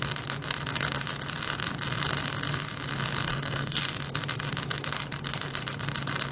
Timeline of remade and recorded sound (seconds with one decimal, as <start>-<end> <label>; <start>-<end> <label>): 0.0-3.3 recorded; 3.3-3.8 remade; 3.8-6.3 recorded